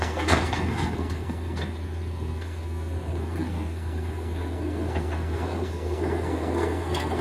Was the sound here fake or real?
fake